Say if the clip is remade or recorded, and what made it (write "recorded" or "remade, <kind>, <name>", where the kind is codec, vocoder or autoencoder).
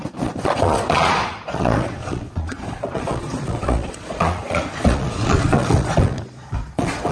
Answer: remade, vocoder, Vocos